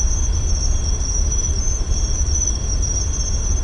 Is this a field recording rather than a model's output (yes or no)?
yes